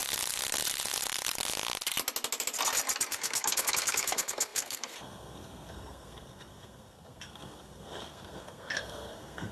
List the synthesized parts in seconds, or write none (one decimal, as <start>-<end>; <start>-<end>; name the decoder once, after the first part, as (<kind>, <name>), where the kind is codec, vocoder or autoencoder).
3.1-9.5 (codec, SNAC)